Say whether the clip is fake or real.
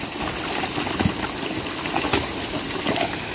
real